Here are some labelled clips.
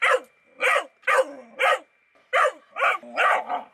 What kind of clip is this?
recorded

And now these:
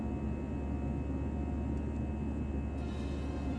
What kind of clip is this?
recorded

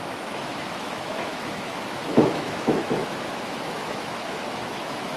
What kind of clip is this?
remade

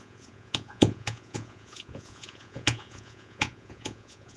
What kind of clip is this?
remade